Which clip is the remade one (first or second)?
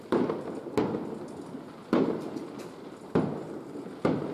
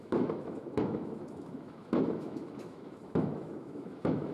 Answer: second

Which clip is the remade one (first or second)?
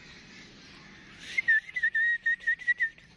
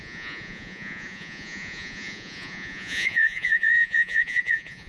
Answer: second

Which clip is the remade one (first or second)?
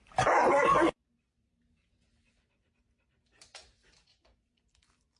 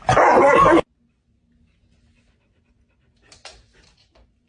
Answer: first